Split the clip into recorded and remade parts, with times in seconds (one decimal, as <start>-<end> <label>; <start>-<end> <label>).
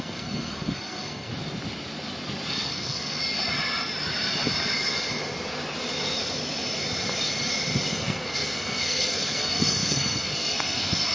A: 0.0-1.3 remade; 1.3-2.5 recorded; 2.5-3.2 remade; 3.2-7.9 recorded; 7.9-11.1 remade